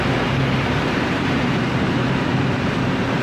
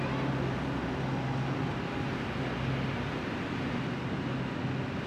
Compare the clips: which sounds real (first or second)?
second